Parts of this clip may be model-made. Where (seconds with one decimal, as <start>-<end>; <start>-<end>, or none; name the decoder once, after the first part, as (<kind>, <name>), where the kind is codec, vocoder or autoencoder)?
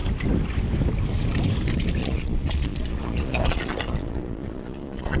2.0-5.2 (vocoder, Vocos)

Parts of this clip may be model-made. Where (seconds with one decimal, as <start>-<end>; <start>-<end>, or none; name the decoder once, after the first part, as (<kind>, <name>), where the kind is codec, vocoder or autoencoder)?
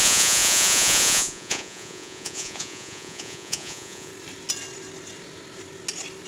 0.0-4.1 (vocoder, Vocos)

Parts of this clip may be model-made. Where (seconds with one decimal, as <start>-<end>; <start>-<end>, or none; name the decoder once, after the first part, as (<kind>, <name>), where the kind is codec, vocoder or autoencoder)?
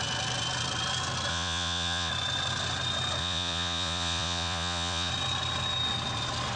1.3-2.1 (vocoder, Vocos); 3.2-5.1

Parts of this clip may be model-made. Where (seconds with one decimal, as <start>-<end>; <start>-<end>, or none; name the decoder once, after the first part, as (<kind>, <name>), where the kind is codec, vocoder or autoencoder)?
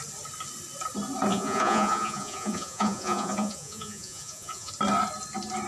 1.3-4.7 (vocoder, Vocos)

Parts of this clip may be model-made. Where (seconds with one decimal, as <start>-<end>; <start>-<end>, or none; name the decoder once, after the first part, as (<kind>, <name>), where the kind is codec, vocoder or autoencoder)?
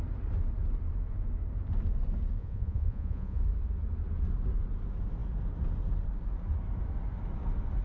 2.4-3.4 (vocoder, Vocos)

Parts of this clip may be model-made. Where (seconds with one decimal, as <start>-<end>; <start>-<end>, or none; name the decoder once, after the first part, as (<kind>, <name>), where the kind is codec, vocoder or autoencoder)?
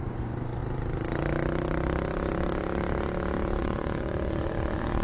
0.0-0.6 (vocoder, Vocos); 3.6-5.0